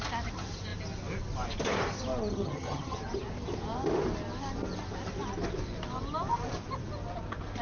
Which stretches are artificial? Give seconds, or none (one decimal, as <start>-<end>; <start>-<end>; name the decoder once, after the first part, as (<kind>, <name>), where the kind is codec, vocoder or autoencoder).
2.3-3.0 (vocoder, HiFi-GAN)